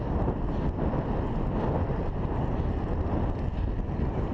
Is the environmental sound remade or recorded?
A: recorded